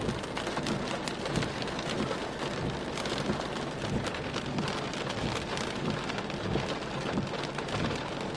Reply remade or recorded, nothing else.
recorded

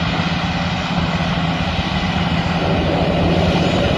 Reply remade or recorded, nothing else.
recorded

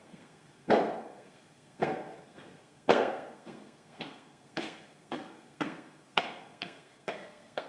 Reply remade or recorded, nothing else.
remade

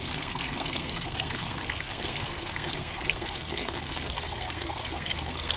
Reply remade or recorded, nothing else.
remade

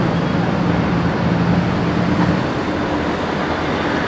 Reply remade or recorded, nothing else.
recorded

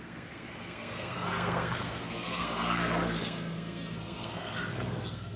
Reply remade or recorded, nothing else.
remade